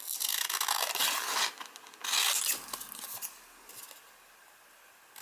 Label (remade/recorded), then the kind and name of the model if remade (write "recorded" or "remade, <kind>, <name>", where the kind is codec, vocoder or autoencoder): recorded